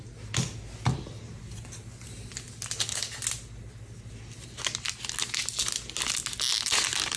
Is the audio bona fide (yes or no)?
yes